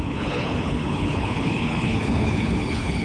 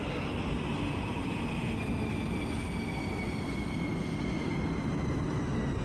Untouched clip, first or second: second